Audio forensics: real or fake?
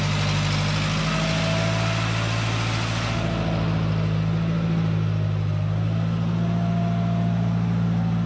real